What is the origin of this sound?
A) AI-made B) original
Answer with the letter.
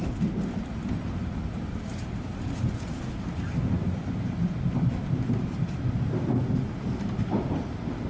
B